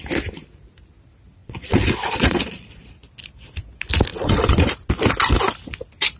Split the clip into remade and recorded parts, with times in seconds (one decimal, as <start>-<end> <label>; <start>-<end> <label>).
0.0-1.4 recorded; 1.4-3.0 remade; 3.0-4.1 recorded; 4.1-4.7 remade; 4.7-6.2 recorded